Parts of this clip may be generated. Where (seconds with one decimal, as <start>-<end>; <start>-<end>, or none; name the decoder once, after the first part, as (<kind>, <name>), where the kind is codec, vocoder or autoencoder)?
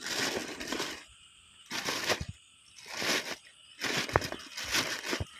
0.4-1.4 (vocoder, BigVGAN v2)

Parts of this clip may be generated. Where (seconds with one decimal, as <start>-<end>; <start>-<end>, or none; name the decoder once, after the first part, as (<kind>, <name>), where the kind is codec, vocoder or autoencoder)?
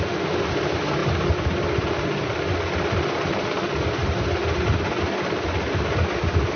none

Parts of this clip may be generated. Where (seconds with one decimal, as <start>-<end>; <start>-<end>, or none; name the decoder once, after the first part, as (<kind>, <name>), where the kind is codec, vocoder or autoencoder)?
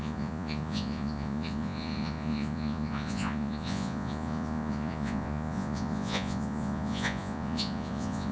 0.0-8.3 (vocoder, Vocos)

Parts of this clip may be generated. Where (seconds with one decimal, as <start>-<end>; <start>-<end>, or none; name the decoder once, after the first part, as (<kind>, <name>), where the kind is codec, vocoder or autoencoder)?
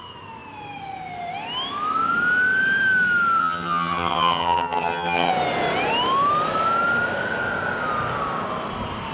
3.4-5.3 (vocoder, HiFi-GAN)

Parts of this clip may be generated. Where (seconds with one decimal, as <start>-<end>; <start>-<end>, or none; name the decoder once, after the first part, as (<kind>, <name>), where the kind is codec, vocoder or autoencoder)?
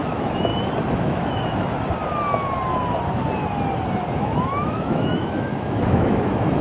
0.0-0.5 (autoencoder, DAC-VAE); 1.0-1.7; 4.1-6.6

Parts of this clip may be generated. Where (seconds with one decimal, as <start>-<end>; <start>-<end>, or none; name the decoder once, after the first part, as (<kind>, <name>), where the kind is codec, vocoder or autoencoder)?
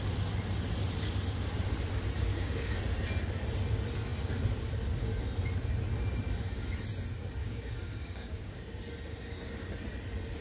2.3-2.8 (codec, DAC); 7.4-8.8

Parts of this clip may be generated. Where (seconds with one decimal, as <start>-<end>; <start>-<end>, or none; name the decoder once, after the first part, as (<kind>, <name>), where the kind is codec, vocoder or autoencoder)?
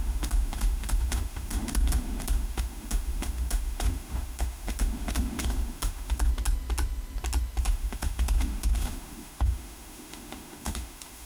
0.0-6.3 (autoencoder, DAC-VAE); 7.6-11.3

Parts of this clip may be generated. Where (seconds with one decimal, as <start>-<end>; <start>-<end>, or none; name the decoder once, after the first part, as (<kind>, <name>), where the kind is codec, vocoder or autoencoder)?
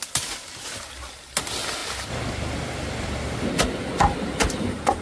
none